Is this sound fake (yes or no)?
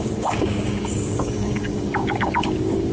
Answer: yes